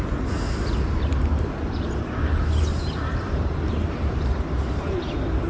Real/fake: real